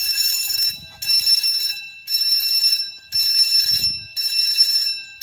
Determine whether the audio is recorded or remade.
remade